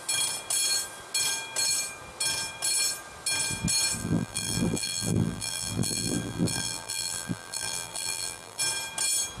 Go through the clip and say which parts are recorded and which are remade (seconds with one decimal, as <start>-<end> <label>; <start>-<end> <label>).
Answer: 0.0-4.0 recorded; 4.0-8.6 remade; 8.6-9.4 recorded